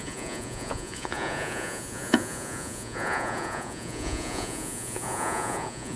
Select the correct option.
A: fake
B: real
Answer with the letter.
A